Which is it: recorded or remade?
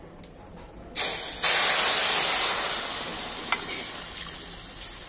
recorded